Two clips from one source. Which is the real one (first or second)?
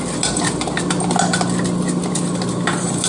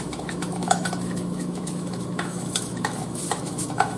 first